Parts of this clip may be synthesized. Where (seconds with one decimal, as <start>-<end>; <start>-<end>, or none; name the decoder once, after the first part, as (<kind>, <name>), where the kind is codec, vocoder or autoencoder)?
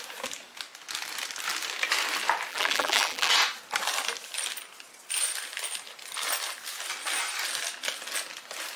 2.5-3.3 (vocoder, BigVGAN v2)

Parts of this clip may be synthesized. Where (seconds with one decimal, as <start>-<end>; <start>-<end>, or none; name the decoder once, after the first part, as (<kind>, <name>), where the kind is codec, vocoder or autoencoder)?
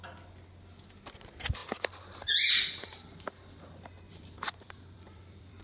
4.1-5.6 (vocoder, BigVGAN v2)